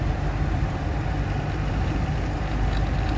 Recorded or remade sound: recorded